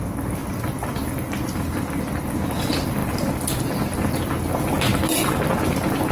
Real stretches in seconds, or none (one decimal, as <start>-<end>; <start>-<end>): 0.0-0.4; 1.8-6.1